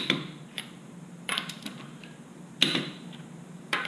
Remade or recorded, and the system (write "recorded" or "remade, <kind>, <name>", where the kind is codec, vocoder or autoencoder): remade, vocoder, BigVGAN v2